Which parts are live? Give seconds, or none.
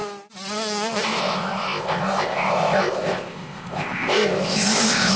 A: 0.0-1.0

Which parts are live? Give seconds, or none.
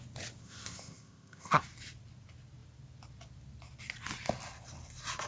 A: 0.0-0.4; 1.6-5.3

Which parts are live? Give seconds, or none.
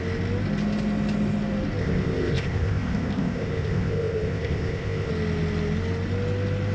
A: 0.0-1.8; 5.1-6.7